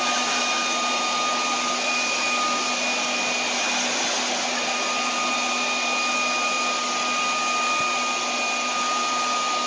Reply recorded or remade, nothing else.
recorded